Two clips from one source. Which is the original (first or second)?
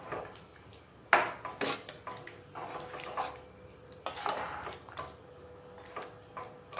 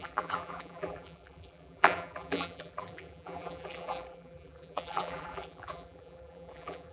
first